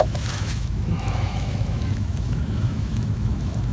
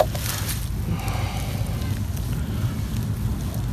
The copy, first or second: first